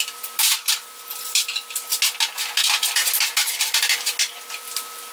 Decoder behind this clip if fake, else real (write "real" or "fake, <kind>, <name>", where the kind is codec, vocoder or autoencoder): real